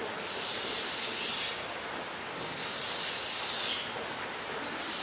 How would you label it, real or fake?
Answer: real